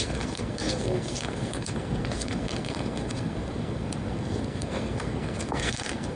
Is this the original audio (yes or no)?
no